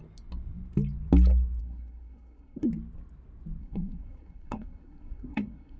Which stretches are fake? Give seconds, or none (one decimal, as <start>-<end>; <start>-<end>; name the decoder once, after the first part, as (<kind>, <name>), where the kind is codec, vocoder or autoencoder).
1.6-2.7 (codec, SNAC); 3.6-5.8

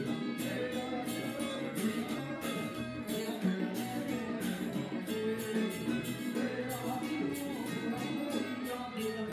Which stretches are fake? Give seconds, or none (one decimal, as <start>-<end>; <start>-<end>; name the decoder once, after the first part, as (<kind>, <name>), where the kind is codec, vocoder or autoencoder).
1.5-5.1 (codec, SNAC)

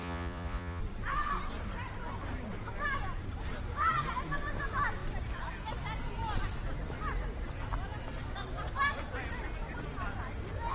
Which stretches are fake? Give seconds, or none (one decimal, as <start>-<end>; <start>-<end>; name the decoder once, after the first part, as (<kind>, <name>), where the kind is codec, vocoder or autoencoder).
0.0-0.8 (vocoder, Vocos)

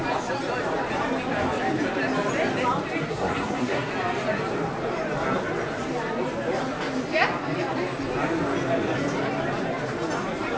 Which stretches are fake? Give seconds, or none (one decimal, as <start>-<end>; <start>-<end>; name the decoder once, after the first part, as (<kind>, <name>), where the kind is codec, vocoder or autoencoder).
3.1-3.9 (codec, SNAC)

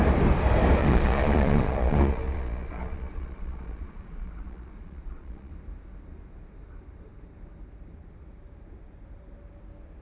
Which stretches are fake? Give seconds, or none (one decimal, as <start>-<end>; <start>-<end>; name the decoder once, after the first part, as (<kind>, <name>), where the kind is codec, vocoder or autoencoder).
0.8-5.5 (vocoder, Vocos)